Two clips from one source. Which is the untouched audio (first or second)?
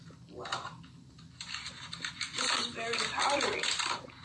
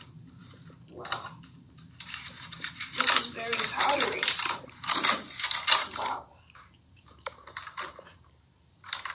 first